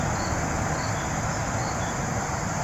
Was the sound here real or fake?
real